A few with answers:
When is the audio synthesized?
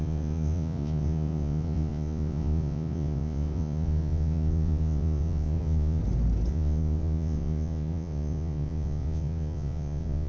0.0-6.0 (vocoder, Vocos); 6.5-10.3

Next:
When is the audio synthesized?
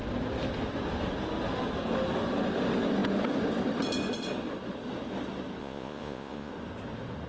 5.6-6.5 (vocoder, Vocos)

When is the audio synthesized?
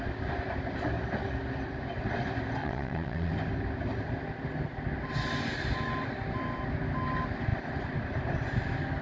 2.6-3.3 (vocoder, Vocos)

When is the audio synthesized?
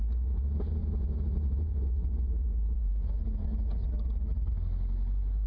0.8-3.2 (vocoder, Vocos)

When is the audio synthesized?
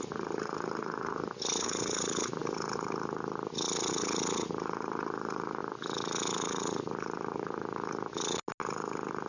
none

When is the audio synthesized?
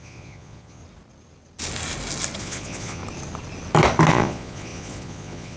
0.0-0.8 (vocoder, Vocos); 2.4-3.0; 4.1-5.6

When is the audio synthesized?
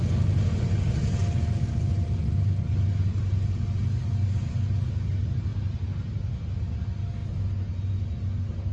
none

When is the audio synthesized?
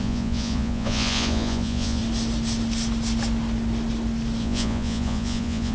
0.0-2.0 (vocoder, Vocos); 4.4-5.7